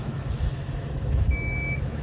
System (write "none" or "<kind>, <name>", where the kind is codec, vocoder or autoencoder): autoencoder, DAC-VAE